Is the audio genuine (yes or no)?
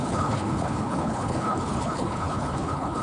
no